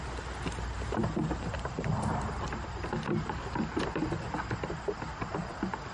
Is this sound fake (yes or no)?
no